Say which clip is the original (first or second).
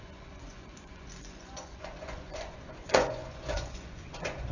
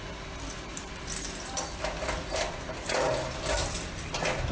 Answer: second